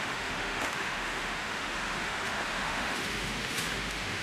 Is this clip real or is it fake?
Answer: fake